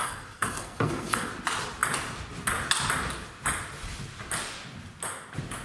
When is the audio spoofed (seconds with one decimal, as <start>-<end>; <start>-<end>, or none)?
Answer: 0.0-1.3